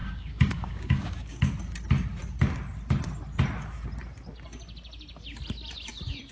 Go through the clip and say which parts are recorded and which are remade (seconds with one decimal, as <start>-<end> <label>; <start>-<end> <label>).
0.0-1.5 remade; 1.5-6.3 recorded